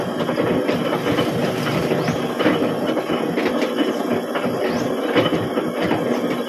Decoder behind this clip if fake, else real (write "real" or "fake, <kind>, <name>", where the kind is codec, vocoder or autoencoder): real